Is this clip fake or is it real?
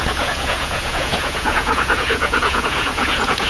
fake